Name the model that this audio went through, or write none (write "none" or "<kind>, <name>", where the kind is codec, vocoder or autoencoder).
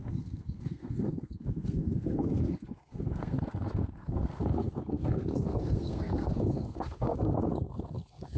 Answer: codec, SNAC